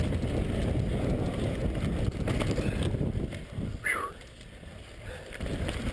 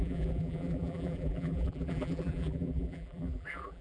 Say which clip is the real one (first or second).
first